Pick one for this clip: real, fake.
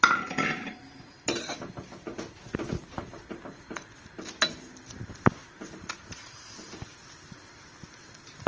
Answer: real